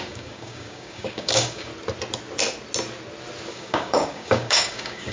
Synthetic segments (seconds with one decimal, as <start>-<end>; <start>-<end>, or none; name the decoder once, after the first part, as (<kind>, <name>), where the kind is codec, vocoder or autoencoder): 0.0-1.7 (codec, DAC); 3.5-5.1